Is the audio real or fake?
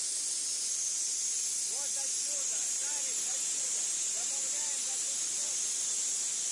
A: real